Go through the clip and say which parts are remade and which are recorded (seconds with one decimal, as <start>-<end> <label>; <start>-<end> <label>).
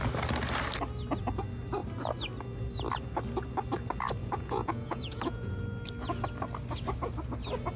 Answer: 0.0-4.2 recorded; 4.2-5.6 remade; 5.6-7.8 recorded